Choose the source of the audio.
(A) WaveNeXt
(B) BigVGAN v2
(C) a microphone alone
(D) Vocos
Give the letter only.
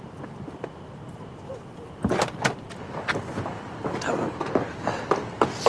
C